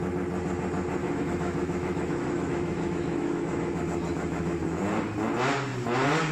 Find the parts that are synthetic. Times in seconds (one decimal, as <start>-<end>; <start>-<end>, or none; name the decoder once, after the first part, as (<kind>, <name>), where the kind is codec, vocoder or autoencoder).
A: 1.0-4.8 (autoencoder, DAC-VAE)